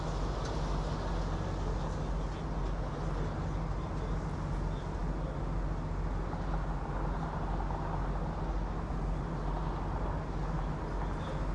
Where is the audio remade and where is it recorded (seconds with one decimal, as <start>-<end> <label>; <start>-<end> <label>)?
0.0-11.5 recorded